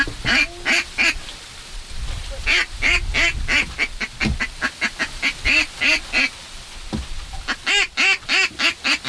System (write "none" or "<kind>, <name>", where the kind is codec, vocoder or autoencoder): none